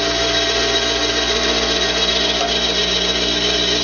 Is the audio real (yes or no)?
yes